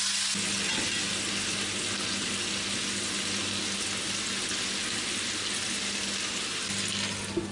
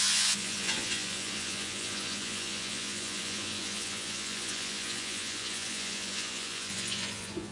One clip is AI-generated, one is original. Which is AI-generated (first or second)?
second